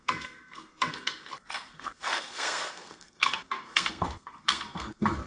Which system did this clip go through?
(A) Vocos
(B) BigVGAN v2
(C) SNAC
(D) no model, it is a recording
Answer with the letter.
C